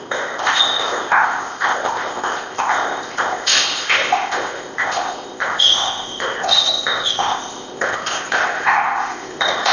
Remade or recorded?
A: remade